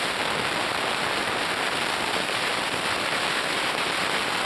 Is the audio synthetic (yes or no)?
no